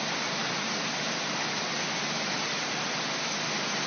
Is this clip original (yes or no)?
yes